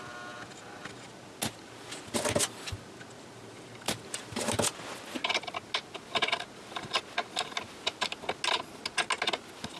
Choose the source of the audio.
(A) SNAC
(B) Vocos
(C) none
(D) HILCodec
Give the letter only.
C